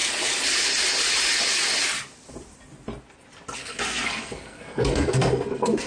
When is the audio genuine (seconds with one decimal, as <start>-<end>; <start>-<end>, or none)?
0.0-3.6